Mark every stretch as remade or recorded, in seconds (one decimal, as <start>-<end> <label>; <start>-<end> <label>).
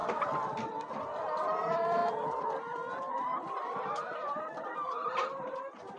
0.0-1.4 recorded; 1.4-2.0 remade; 2.0-2.9 recorded; 2.9-6.0 remade